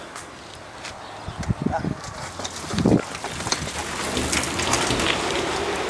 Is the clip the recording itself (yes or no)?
yes